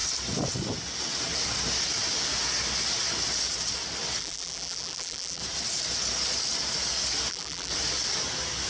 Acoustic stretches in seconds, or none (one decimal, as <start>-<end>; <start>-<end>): 0.0-4.2; 5.4-7.3; 7.7-8.7